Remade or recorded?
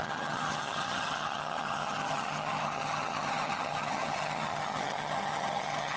remade